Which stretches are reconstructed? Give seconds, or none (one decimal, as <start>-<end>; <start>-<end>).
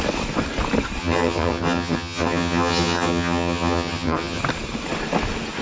1.0-4.4